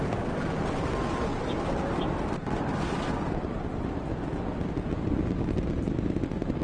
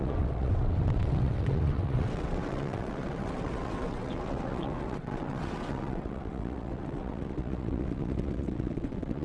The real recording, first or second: first